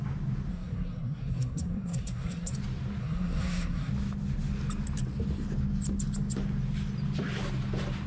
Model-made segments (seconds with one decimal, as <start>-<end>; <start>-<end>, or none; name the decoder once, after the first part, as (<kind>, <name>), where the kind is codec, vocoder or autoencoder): 0.5-2.5 (codec, SNAC); 3.0-3.9